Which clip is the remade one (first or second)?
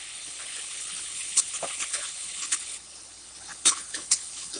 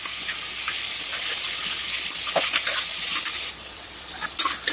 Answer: first